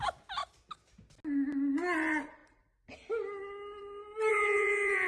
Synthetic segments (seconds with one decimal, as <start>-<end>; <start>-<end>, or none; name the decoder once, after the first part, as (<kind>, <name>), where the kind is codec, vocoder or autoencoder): 4.3-5.1 (vocoder, Vocos)